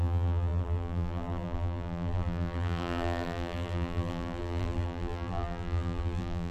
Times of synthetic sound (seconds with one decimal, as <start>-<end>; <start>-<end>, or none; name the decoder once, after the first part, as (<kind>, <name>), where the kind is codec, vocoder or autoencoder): 0.0-6.5 (vocoder, BigVGAN v2)